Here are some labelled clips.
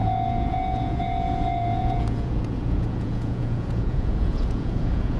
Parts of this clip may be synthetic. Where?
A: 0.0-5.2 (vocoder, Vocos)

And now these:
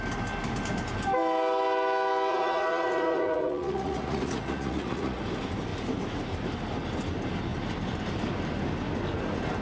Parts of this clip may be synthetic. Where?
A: 2.3-5.2 (vocoder, Vocos)

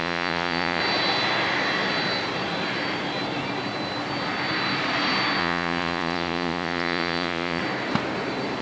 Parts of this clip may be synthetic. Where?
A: 0.0-0.8 (vocoder, Vocos); 5.4-7.6

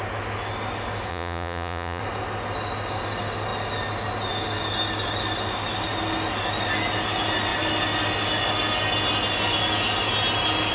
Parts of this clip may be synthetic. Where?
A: 1.1-2.0 (vocoder, Vocos)

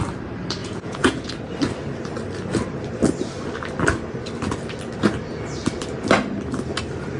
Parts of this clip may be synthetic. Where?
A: 0.6-1.3 (vocoder, Vocos)

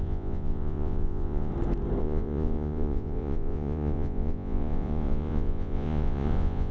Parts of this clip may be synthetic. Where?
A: 0.0-1.5 (vocoder, Vocos); 2.0-6.7

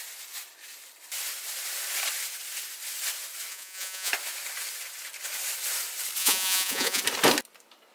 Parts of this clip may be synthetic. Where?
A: 3.5-4.1 (vocoder, Vocos); 6.2-7.0

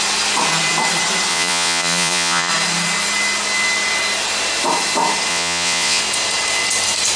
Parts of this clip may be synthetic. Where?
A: 1.3-2.5 (vocoder, Vocos); 5.3-6.0